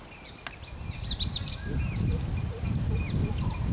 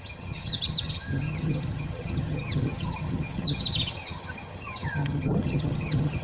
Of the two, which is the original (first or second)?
first